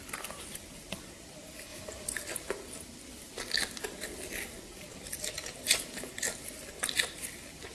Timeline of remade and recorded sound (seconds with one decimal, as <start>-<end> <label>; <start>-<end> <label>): 0.0-7.7 recorded